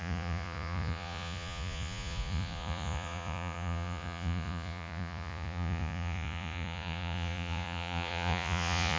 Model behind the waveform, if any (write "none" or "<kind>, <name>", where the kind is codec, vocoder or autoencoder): vocoder, Vocos